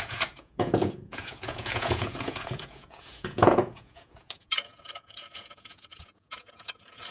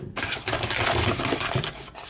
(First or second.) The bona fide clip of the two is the second